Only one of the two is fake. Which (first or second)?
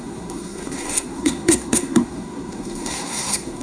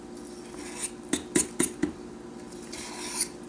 first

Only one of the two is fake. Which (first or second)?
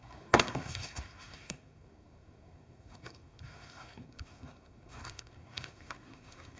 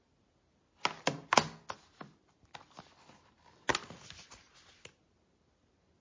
first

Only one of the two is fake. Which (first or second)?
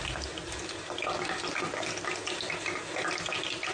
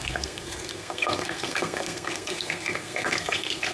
second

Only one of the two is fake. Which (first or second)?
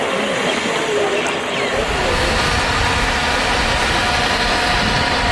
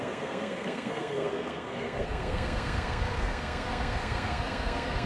second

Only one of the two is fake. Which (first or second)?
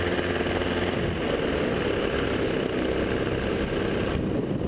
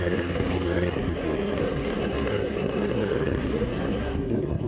second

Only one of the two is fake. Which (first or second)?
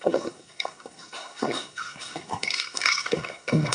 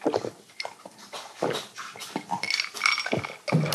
first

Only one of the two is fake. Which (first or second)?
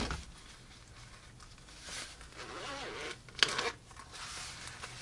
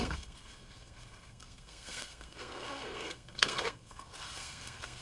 second